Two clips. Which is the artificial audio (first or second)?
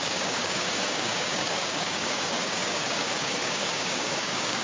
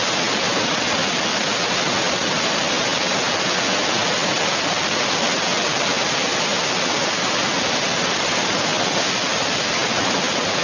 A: first